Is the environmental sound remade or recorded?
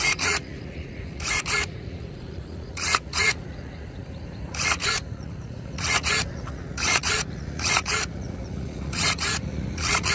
remade